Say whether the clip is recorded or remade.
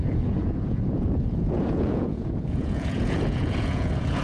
remade